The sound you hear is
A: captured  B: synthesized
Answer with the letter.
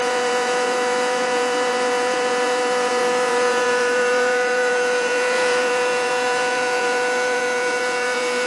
B